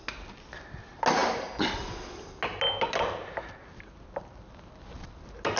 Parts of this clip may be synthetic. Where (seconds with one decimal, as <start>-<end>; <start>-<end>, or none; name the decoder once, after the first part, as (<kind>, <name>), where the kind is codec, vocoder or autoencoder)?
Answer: none